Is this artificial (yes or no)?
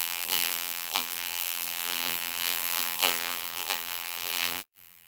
yes